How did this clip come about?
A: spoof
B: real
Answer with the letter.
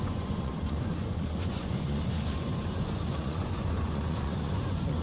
A